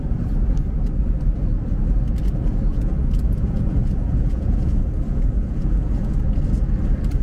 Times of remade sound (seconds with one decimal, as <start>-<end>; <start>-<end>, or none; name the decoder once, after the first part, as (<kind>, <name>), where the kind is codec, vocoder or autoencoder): 2.7-6.4 (vocoder, Vocos)